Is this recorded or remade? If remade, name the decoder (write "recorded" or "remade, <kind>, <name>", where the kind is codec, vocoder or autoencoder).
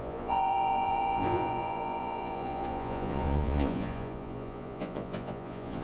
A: remade, vocoder, Vocos